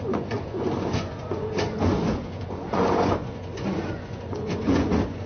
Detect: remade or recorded remade